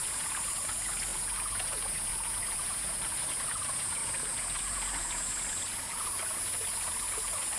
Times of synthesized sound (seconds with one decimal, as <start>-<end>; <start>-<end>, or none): 0.0-7.6